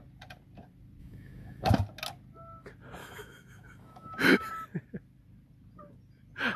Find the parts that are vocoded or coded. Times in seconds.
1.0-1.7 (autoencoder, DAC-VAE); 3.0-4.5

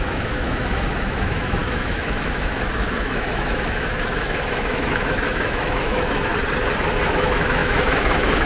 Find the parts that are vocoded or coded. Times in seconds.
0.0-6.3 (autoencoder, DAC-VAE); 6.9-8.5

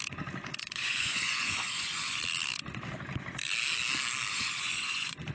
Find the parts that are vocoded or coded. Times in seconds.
0.5-2.2 (vocoder, Vocos); 4.3-5.3